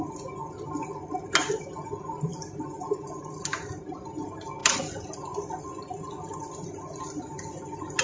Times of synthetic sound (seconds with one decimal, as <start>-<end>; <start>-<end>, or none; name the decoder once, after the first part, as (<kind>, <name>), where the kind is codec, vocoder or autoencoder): none